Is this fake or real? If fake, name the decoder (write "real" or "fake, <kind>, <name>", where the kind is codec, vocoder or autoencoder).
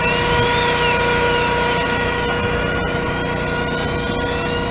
real